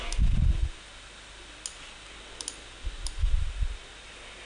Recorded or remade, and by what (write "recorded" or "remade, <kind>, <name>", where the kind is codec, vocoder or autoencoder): recorded